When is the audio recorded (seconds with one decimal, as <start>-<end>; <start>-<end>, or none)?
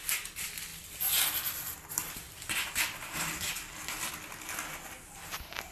0.0-5.7